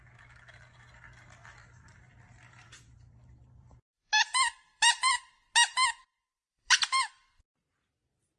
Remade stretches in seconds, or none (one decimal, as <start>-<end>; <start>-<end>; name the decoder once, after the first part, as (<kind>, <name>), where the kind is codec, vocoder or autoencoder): 1.4-5.3 (vocoder, BigVGAN v2); 6.0-7.4